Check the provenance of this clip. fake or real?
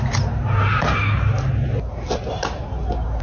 real